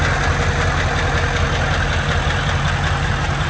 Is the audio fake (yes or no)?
no